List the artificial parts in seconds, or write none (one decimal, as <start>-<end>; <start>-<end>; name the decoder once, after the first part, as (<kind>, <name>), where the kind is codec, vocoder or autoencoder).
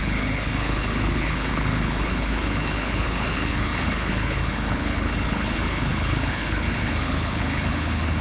0.0-8.2 (codec, HILCodec)